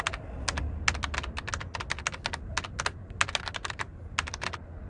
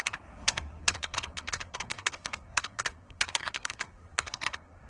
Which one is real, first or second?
first